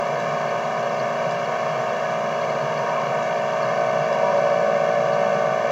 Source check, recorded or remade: recorded